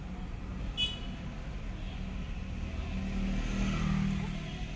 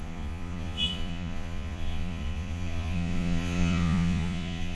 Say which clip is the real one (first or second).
first